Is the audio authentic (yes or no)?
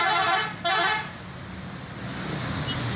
yes